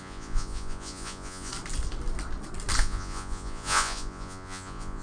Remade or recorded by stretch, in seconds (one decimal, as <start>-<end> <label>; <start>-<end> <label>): 0.0-1.5 remade; 1.5-2.8 recorded; 2.8-5.0 remade

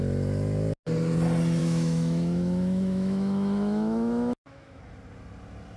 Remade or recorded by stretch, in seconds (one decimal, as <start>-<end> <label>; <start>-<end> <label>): 0.0-1.6 recorded; 1.6-4.8 remade; 4.8-5.8 recorded

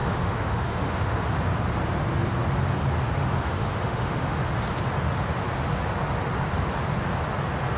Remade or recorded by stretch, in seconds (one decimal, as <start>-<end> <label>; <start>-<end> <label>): 0.0-1.1 remade; 1.1-3.2 recorded; 3.2-4.4 remade; 4.4-7.8 recorded

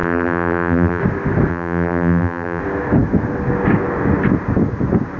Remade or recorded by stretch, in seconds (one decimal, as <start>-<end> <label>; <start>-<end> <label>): 0.0-1.0 remade; 1.0-1.5 recorded; 1.5-2.6 remade; 2.6-5.2 recorded